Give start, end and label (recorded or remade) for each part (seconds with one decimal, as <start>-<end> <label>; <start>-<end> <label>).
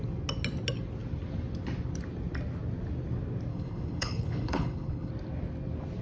0.0-3.5 recorded; 3.5-5.1 remade; 5.1-6.0 recorded